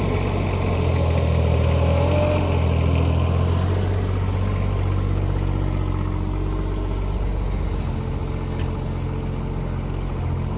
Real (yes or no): yes